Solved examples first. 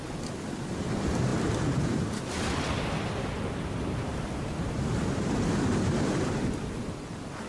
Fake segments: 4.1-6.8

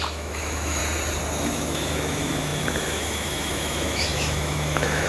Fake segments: 0.0-0.8; 1.4-5.1

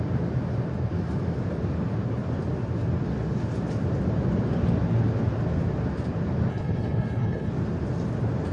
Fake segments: 6.5-7.5

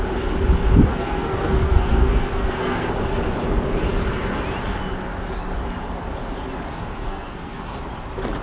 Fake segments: 0.9-2.9; 6.7-7.8

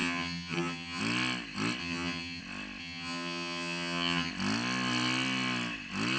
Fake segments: 0.0-1.0; 1.8-2.4; 2.8-4.3

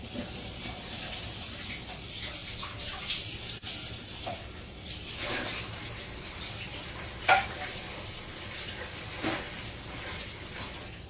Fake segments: none